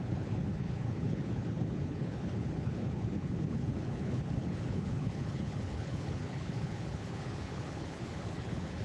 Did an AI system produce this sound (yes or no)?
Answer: yes